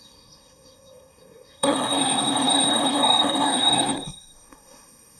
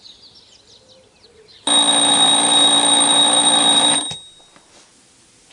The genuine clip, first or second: second